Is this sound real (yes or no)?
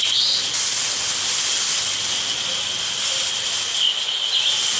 yes